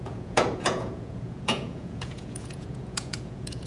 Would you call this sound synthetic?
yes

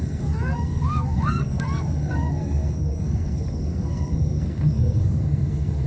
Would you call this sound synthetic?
yes